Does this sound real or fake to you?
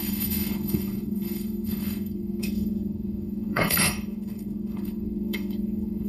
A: fake